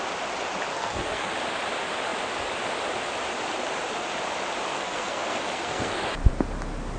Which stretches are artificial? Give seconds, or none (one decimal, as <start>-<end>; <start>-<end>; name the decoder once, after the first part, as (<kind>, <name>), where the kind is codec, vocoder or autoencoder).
0.7-1.3 (codec, SNAC); 4.7-6.1